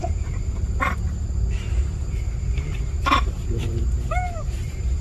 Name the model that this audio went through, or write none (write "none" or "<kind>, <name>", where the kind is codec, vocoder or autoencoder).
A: vocoder, BigVGAN v2